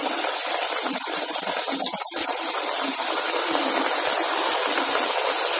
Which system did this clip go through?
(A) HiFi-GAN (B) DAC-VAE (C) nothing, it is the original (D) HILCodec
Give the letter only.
C